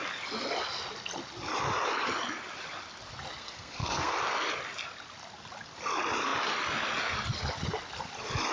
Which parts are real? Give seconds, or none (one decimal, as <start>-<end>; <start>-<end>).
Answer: 0.0-3.4; 4.1-8.5